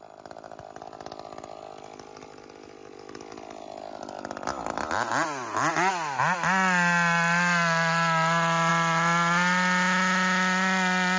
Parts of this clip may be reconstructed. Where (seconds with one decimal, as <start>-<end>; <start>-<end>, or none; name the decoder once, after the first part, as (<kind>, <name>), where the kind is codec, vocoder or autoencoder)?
none